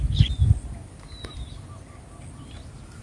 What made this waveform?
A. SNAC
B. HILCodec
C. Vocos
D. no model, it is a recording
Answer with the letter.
D